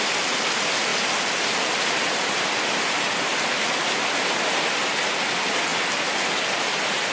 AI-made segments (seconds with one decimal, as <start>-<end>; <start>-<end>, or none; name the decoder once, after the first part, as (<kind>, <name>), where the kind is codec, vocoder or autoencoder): none